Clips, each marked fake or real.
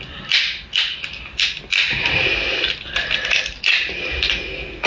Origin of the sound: real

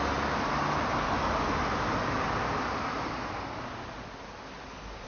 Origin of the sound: real